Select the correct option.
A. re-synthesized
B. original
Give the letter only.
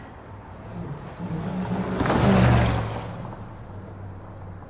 B